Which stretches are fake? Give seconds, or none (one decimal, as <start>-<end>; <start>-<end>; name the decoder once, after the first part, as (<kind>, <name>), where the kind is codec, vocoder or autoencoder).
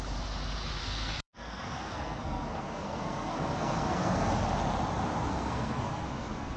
0.8-4.3 (codec, SNAC); 5.3-6.6